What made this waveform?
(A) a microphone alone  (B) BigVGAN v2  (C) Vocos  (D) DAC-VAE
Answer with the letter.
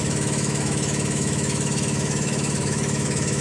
D